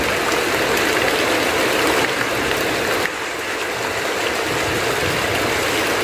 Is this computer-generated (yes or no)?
no